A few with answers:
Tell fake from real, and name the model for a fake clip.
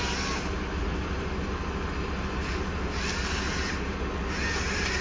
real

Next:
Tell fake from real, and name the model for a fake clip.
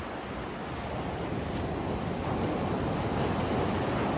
real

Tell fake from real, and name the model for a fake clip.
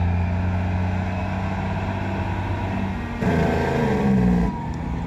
real